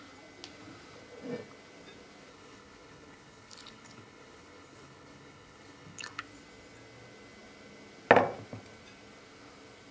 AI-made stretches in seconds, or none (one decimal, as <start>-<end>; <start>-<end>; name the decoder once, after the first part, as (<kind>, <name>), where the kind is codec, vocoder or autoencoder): 2.3-6.2 (codec, HILCodec)